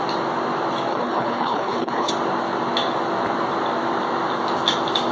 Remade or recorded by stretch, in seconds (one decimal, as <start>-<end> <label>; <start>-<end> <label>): 0.0-0.9 recorded; 0.9-2.1 remade; 2.1-5.1 recorded